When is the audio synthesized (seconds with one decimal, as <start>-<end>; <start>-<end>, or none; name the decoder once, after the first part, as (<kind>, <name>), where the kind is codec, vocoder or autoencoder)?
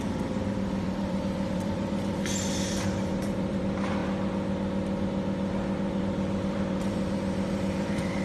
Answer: 0.0-4.0 (vocoder, BigVGAN v2); 6.0-8.2